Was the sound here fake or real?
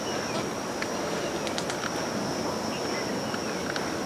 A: real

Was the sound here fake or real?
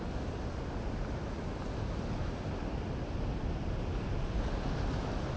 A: real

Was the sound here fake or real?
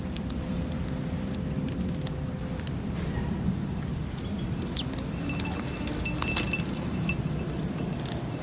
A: real